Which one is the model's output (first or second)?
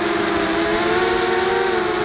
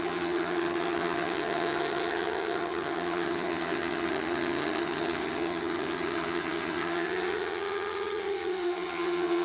second